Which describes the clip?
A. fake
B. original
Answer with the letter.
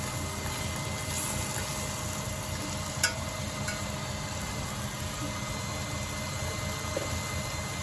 B